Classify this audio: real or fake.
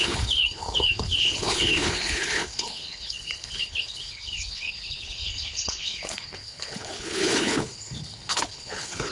fake